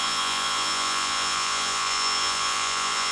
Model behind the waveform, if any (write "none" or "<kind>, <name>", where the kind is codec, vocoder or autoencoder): vocoder, Vocos